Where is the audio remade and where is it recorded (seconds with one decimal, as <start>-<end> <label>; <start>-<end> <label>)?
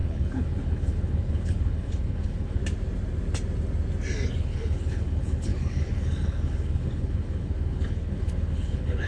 0.0-2.6 remade; 2.6-4.4 recorded; 4.4-9.1 remade